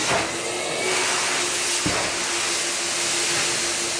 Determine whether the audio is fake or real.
real